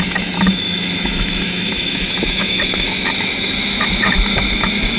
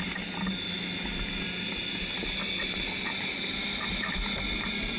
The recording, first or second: second